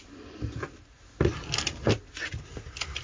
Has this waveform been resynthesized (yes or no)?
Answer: no